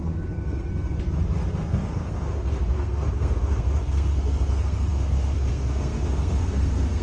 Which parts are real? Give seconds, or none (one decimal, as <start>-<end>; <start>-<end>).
0.7-1.6